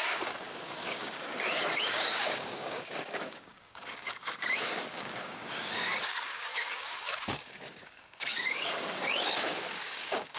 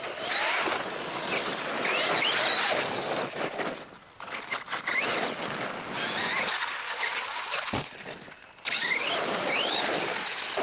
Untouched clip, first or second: second